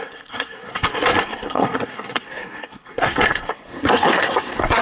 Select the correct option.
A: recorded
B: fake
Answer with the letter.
B